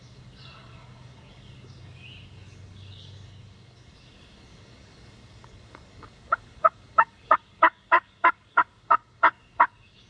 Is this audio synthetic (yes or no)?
yes